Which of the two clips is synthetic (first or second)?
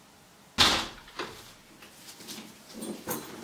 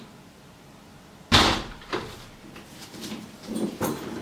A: second